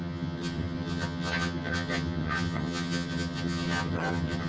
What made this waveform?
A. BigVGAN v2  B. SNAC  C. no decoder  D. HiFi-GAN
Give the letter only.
D